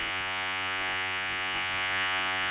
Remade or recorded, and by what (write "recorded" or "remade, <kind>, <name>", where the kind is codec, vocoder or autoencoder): remade, vocoder, Vocos